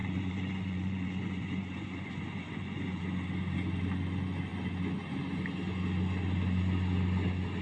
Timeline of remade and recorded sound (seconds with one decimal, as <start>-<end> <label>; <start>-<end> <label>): 0.0-3.0 remade; 3.0-7.6 recorded